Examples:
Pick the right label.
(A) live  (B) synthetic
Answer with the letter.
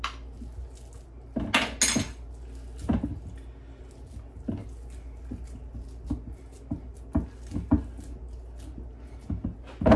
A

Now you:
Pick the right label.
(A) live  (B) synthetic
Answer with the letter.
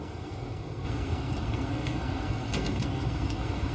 B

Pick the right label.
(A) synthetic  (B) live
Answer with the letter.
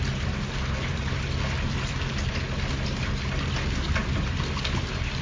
B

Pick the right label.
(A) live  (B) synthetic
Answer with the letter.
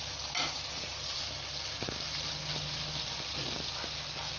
A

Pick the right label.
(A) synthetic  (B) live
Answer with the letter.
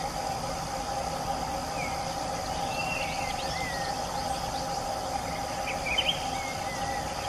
B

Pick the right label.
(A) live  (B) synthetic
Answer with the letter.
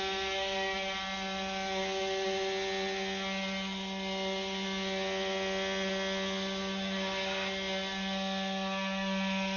A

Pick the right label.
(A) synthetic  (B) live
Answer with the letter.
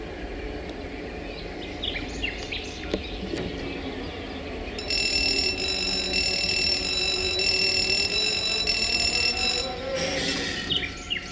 B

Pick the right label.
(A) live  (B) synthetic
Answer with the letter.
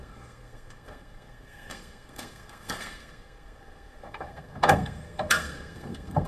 B